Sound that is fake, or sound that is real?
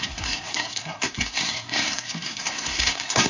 fake